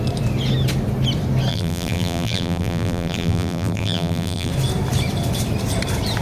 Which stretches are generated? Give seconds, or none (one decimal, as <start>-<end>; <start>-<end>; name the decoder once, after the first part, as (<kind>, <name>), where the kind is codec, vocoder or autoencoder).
1.5-4.5 (vocoder, BigVGAN v2)